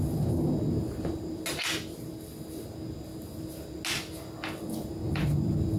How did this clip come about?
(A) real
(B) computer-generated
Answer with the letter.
A